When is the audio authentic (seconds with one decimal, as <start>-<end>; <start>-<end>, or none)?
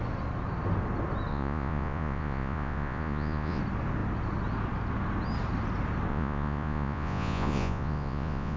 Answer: 0.0-1.3; 3.6-6.1